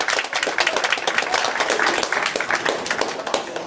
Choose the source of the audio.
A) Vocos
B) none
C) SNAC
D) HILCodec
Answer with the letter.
B